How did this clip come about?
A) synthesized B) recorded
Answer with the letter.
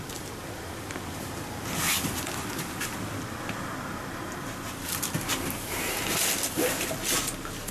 B